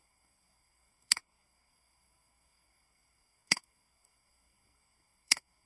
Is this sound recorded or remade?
remade